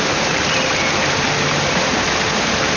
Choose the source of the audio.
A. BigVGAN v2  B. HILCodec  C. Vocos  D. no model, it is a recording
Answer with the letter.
D